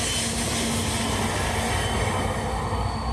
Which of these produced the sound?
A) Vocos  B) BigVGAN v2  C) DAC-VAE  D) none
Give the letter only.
D